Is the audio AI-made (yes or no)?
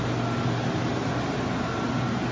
no